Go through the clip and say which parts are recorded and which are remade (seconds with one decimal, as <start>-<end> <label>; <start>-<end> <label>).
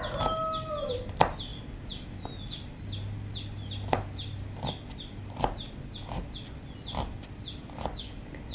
0.0-8.5 recorded